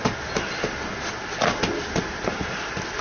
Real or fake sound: real